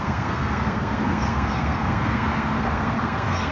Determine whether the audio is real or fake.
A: fake